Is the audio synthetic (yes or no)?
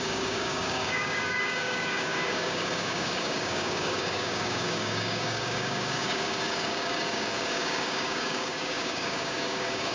yes